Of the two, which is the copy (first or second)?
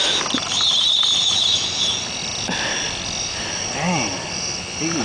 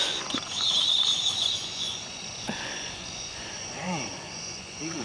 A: second